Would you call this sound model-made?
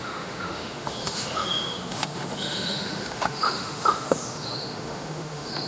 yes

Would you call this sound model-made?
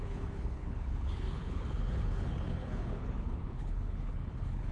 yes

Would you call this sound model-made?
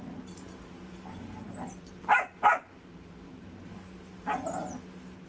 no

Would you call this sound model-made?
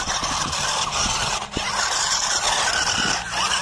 no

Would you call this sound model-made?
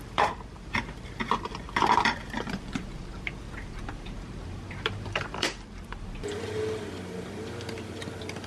yes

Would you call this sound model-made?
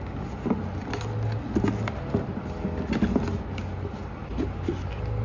no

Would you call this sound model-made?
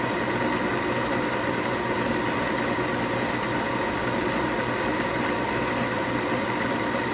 no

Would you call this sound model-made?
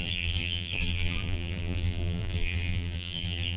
yes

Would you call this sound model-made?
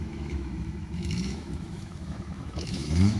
yes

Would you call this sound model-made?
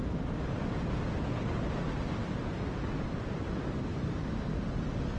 no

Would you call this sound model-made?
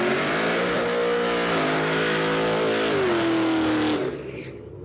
no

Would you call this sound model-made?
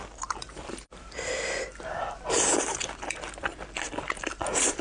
yes